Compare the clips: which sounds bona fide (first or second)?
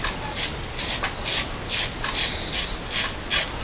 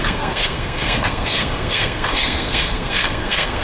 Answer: first